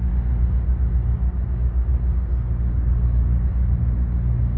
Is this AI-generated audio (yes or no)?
no